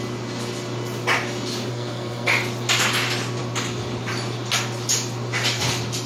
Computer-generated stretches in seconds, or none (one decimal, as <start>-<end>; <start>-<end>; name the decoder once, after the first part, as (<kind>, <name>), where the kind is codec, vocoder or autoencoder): 1.7-2.3 (codec, SNAC)